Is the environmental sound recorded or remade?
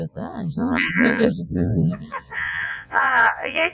remade